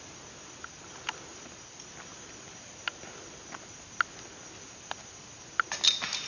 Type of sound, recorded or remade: recorded